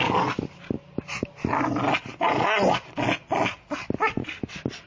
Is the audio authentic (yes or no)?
yes